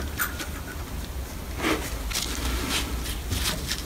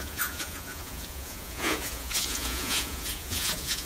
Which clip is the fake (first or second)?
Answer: second